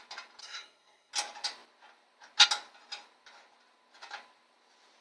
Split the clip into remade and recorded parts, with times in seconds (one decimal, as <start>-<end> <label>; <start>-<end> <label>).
0.0-0.4 recorded; 0.4-1.1 remade; 1.1-5.0 recorded

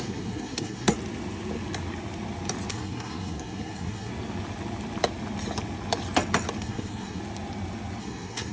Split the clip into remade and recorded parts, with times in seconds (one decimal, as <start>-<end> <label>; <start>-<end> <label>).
0.0-0.9 remade; 0.9-2.7 recorded; 2.7-4.1 remade; 4.1-6.6 recorded; 6.6-7.2 remade; 7.2-8.0 recorded; 8.0-8.5 remade

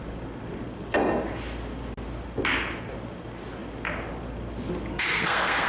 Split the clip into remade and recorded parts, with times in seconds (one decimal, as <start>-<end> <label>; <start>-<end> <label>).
0.0-4.9 recorded; 4.9-5.7 remade

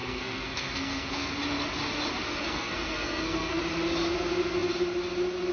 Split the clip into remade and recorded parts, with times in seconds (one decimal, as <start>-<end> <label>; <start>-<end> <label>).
0.0-1.3 remade; 1.3-2.4 recorded; 2.4-3.6 remade; 3.6-5.5 recorded

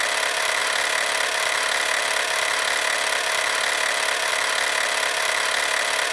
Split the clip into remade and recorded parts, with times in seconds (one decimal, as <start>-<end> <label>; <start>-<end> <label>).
0.0-6.1 recorded

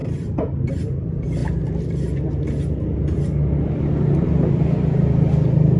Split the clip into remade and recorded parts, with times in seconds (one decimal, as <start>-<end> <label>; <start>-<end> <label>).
0.0-5.8 recorded

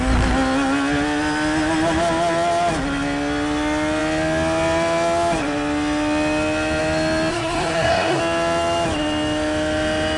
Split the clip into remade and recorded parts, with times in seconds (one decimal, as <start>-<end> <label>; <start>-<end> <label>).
0.0-7.3 recorded; 7.3-8.2 remade; 8.2-10.2 recorded